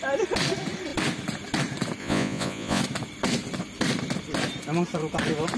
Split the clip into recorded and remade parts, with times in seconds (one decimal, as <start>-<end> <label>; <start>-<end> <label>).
0.0-2.0 recorded; 2.0-2.8 remade; 2.8-5.6 recorded